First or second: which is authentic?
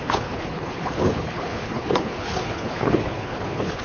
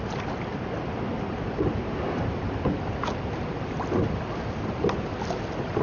second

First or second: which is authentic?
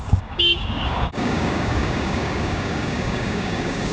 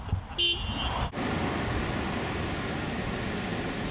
second